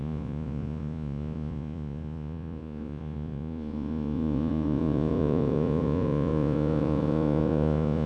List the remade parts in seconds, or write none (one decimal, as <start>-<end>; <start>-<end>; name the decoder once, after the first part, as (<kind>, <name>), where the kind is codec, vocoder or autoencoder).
0.0-8.1 (vocoder, Vocos)